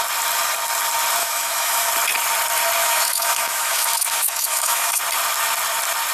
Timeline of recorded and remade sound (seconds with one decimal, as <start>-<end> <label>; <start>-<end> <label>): 0.0-1.2 recorded; 1.2-1.9 remade; 1.9-2.8 recorded; 2.8-5.0 remade; 5.0-6.1 recorded